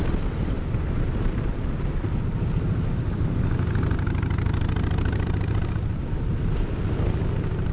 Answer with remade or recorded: recorded